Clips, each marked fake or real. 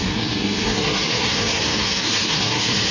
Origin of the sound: fake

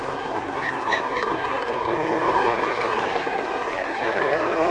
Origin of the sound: fake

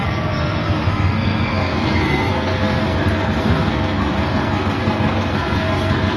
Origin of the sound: fake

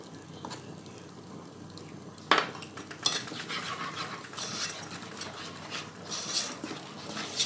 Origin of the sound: real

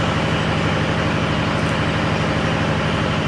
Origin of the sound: real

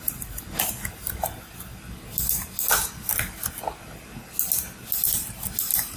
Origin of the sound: real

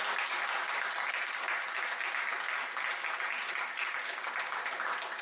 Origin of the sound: real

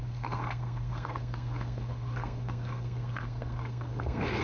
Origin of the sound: fake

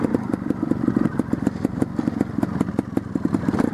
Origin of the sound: real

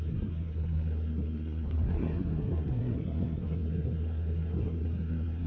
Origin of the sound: fake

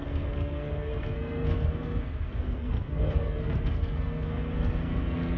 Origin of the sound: fake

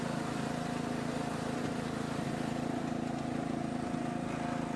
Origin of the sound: real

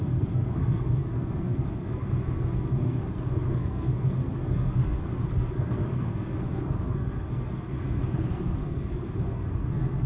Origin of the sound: fake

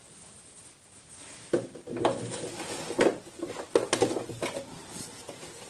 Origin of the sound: real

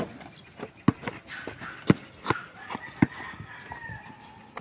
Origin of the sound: real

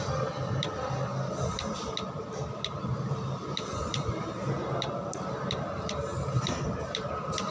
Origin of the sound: real